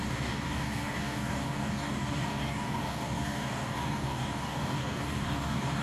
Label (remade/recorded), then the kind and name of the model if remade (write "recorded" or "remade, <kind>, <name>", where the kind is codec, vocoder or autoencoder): remade, codec, DAC